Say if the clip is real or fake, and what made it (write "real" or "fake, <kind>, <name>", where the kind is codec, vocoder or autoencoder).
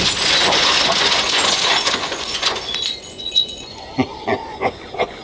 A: fake, vocoder, Vocos